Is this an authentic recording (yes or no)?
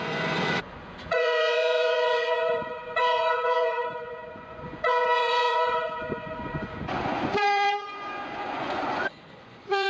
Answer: no